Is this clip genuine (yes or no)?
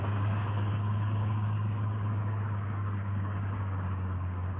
no